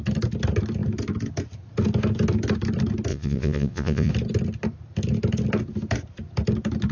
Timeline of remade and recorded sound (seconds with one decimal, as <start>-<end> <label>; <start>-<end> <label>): 0.0-3.1 recorded; 3.1-4.1 remade; 4.1-6.9 recorded